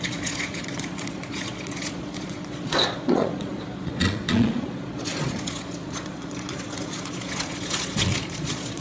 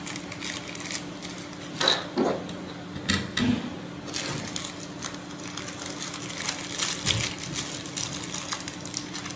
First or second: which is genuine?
second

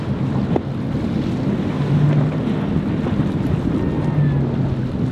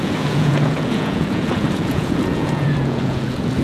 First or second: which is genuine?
first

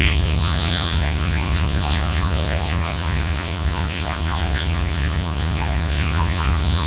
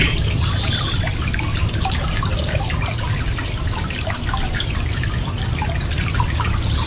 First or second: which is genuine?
second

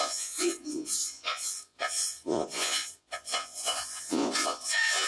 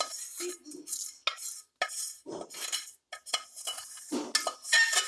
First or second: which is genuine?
second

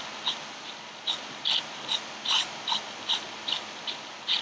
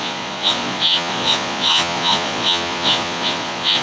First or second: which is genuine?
first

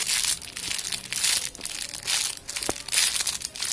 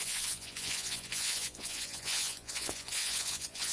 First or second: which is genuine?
first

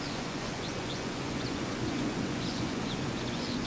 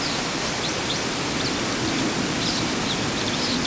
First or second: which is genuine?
second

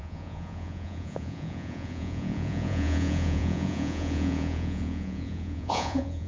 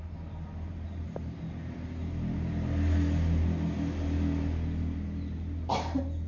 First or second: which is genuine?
second